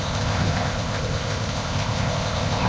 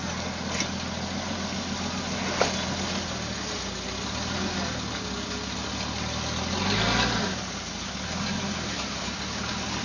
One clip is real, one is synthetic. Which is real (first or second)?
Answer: second